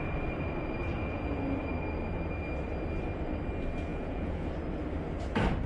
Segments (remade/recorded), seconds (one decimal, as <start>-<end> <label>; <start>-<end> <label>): 0.0-0.8 recorded; 0.8-1.4 remade; 1.4-3.9 recorded; 3.9-4.5 remade; 4.5-5.7 recorded